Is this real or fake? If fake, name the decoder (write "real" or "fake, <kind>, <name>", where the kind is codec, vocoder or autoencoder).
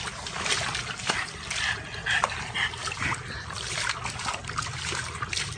real